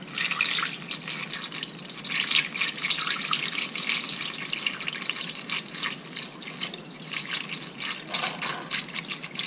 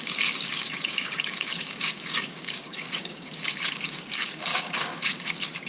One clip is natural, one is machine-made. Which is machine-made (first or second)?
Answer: second